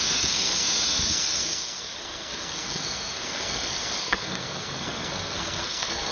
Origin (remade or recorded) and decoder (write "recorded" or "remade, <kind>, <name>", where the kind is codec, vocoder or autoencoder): remade, codec, SNAC